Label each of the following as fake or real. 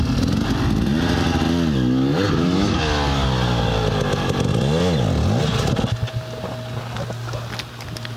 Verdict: real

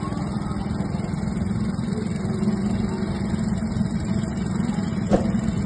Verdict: real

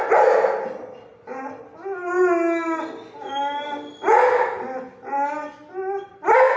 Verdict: real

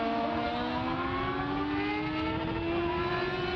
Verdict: real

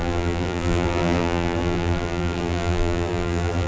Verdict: fake